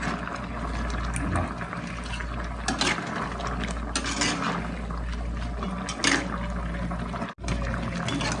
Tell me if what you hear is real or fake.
real